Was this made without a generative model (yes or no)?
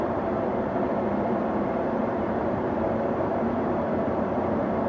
no